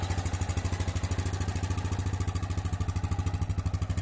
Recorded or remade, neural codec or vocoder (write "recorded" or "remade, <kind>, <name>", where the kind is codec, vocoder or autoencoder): recorded